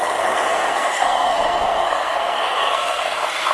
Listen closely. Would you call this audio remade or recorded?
remade